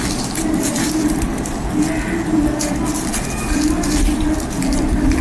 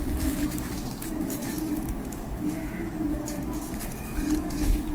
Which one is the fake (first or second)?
second